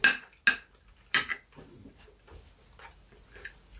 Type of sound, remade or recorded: recorded